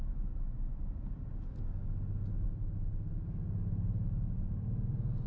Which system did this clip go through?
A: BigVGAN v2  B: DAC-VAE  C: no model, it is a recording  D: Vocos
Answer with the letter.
C